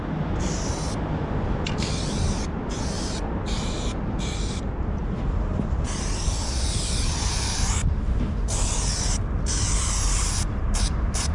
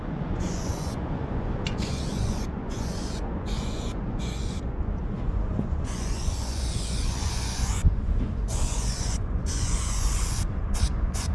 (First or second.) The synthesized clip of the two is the second